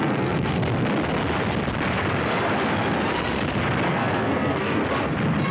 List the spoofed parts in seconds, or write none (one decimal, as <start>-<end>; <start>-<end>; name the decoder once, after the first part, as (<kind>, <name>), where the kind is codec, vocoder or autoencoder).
0.0-0.6 (codec, SNAC); 3.9-4.8